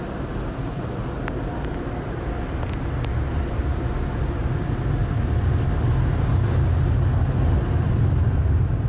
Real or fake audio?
real